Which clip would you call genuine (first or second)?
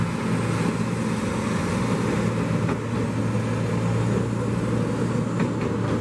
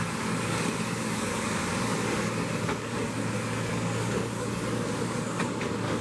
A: first